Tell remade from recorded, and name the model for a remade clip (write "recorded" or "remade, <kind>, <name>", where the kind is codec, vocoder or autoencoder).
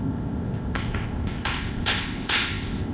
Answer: remade, codec, ZipCodec